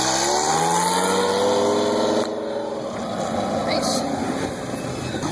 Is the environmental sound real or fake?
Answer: real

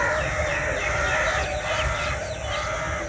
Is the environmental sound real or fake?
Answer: fake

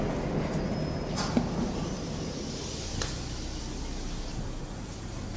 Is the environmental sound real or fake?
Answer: real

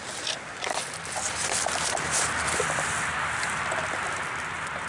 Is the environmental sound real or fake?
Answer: fake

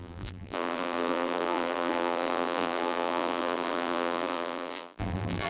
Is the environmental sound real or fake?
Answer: fake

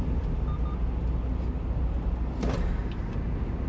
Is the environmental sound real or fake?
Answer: real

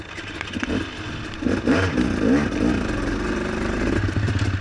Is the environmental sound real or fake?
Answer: real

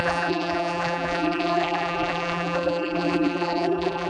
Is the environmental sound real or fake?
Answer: fake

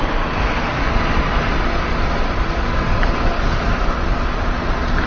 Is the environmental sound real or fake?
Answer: real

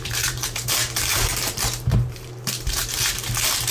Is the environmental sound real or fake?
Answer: fake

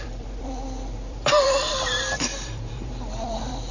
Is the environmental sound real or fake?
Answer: fake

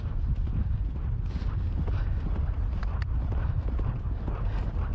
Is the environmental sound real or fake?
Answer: real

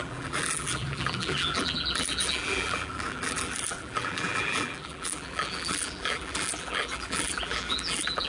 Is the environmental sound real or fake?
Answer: fake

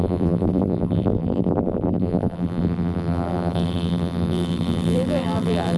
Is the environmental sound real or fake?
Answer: fake